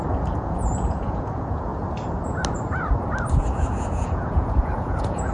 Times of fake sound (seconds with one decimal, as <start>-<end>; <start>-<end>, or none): 0.0-1.7; 3.3-5.3